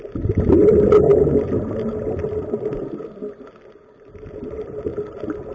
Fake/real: real